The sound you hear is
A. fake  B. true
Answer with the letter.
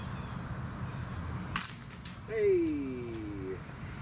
B